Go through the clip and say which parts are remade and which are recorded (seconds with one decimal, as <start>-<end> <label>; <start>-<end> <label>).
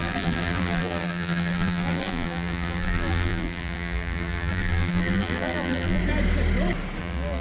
0.0-6.0 remade; 6.0-7.0 recorded; 7.0-7.4 remade